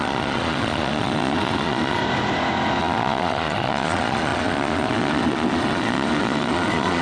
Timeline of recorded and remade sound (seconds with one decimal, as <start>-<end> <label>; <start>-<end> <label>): 0.0-2.0 remade; 2.0-2.8 recorded; 2.8-7.0 remade